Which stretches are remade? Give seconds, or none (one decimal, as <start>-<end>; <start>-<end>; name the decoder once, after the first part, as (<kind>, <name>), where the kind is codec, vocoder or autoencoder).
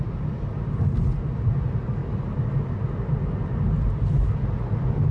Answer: 2.0-5.1 (vocoder, BigVGAN v2)